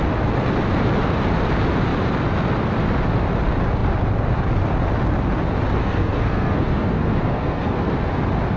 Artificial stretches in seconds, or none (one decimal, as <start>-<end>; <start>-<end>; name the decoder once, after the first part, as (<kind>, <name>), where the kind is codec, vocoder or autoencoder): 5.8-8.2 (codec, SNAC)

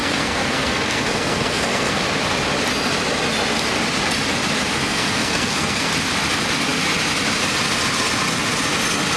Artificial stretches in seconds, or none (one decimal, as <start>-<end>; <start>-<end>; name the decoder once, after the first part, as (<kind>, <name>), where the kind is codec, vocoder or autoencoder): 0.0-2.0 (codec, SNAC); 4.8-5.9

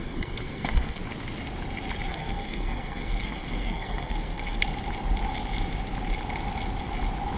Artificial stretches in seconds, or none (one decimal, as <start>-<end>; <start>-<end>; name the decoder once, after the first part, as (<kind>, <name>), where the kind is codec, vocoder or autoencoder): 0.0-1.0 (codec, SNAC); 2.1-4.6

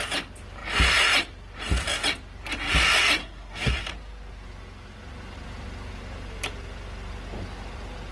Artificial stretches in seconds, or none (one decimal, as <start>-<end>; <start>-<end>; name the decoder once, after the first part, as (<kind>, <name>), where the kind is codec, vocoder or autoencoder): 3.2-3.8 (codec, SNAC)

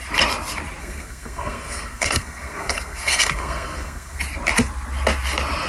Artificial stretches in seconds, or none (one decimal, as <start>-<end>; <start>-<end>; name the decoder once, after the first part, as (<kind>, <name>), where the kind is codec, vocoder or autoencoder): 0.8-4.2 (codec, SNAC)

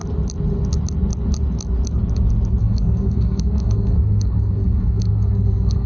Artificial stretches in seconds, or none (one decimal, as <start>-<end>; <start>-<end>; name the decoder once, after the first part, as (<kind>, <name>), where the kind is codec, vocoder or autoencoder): 2.6-5.9 (codec, SNAC)

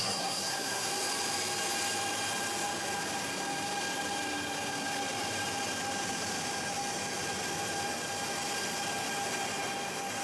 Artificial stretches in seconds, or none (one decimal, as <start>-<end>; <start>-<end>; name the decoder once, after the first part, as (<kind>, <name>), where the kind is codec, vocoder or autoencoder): 0.0-0.9 (codec, SNAC)

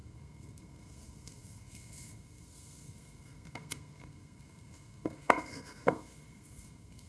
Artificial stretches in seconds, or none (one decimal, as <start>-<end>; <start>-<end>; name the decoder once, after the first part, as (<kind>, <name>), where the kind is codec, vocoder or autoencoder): 0.0-7.1 (codec, SNAC)